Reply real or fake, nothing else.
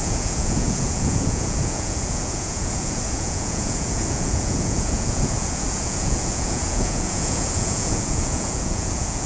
fake